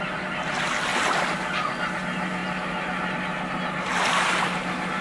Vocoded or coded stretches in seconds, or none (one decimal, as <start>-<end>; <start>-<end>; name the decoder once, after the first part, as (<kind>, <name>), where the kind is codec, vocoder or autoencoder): none